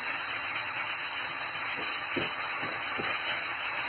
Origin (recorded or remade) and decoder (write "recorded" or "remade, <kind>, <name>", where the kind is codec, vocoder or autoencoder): remade, vocoder, HiFi-GAN